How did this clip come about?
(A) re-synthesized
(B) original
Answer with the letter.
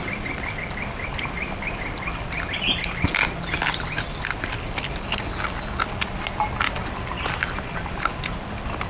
B